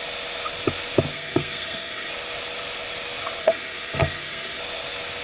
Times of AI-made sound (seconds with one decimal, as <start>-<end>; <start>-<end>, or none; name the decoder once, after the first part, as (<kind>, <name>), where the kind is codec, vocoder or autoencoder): 1.1-2.1 (codec, SNAC); 3.4-4.6